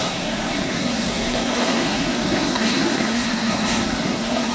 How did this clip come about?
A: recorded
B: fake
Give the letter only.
B